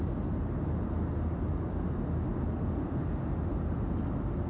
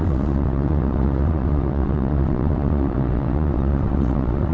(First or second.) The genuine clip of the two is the first